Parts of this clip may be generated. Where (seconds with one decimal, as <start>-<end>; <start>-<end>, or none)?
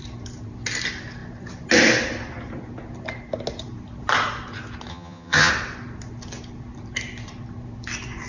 4.9-5.5